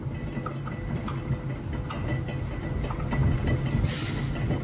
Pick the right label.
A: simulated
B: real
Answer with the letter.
B